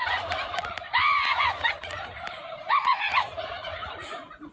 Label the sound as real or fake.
fake